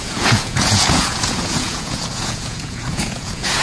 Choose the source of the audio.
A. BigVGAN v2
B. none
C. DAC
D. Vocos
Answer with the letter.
D